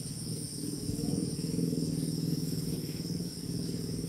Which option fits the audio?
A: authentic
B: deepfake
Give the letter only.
B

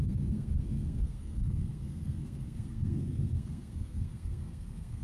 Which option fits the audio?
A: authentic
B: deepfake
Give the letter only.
B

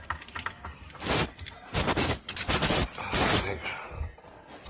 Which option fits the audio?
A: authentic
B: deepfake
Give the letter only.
A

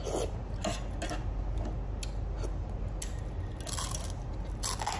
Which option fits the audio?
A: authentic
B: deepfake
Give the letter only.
A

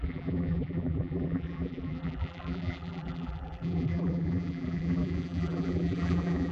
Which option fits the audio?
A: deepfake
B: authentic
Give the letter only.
A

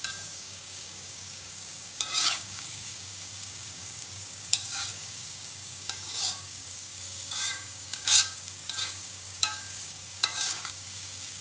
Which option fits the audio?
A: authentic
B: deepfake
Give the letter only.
B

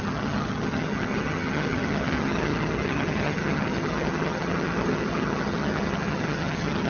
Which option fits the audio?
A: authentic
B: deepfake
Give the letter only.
B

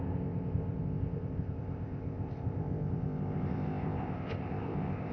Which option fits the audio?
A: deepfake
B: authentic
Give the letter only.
A